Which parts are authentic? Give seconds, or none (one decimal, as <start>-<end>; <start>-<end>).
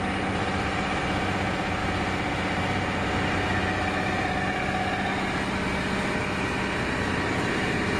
1.8-6.3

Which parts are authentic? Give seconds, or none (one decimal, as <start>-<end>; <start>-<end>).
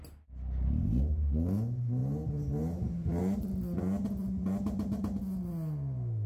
0.0-6.3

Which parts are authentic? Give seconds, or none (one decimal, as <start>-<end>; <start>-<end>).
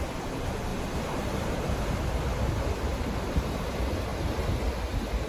0.0-0.7; 1.8-2.9; 3.5-5.3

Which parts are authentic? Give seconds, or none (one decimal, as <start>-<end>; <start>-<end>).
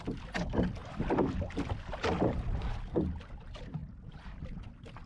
0.0-0.8; 3.3-3.8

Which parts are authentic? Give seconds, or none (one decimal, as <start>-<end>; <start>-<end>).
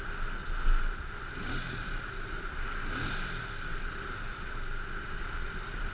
0.0-5.9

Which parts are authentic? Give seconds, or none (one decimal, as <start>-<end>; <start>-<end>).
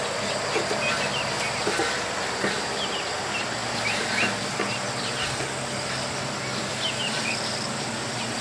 0.0-1.8; 3.1-8.4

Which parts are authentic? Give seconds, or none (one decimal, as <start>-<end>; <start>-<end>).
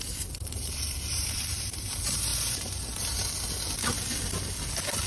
2.3-5.1